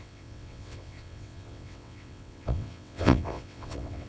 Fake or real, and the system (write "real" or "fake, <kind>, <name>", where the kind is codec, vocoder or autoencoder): fake, vocoder, WaveNeXt